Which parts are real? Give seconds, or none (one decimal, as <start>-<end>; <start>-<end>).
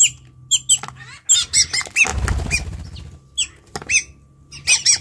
0.0-5.0